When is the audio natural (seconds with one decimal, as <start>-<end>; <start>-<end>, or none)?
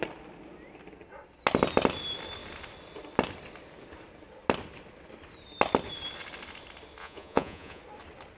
0.0-7.0; 7.8-8.4